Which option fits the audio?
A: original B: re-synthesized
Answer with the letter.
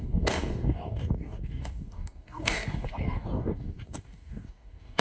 B